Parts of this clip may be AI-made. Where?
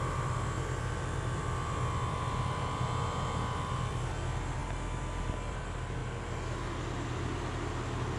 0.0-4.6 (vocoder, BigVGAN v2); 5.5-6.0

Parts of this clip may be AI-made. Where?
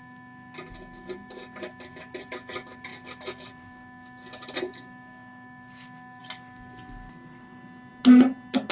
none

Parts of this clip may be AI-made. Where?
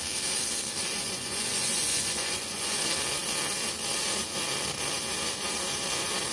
0.8-2.8 (vocoder, Vocos)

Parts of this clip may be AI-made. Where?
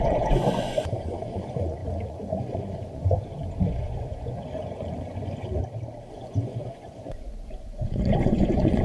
0.0-5.6 (vocoder, Vocos); 6.1-8.8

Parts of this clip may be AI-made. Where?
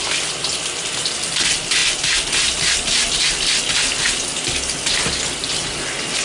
none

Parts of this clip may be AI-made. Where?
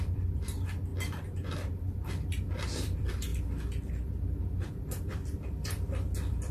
0.0-0.9 (vocoder, BigVGAN v2); 2.1-3.3; 3.9-6.5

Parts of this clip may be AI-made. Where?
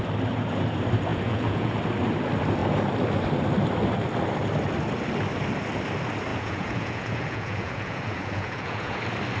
1.1-1.8 (vocoder, Vocos); 6.3-9.0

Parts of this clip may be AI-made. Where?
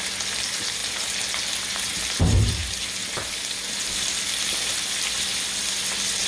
none